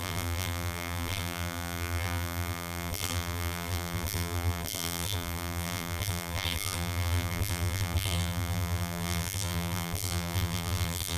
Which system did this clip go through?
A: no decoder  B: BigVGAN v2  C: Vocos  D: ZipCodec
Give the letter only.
B